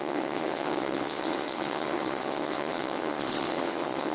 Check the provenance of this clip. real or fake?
fake